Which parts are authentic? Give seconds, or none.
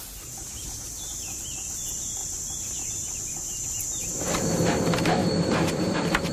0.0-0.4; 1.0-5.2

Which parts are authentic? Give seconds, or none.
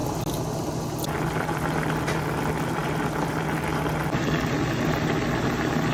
0.0-5.9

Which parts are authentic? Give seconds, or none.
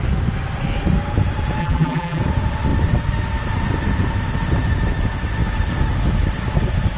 0.0-1.6; 2.2-7.0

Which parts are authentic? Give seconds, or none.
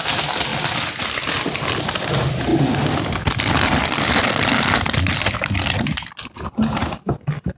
0.0-0.5; 1.0-2.5; 6.1-7.6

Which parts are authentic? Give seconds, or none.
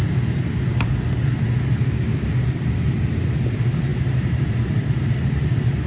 0.0-3.5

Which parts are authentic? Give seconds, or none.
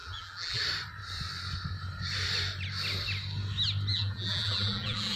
0.6-3.9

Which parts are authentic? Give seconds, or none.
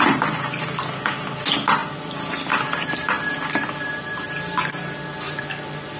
0.0-6.0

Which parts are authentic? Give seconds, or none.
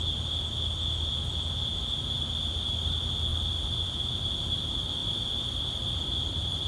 0.0-3.3; 4.1-5.0